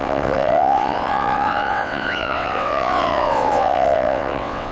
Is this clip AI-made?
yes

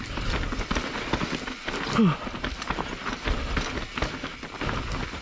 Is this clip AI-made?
no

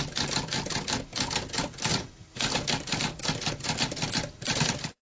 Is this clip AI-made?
no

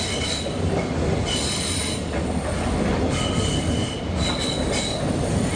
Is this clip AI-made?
no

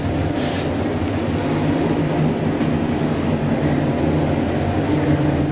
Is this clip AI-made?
no